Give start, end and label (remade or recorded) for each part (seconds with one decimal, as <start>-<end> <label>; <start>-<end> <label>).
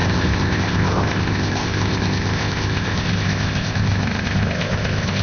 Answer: 0.0-5.2 remade